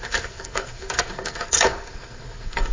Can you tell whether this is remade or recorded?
remade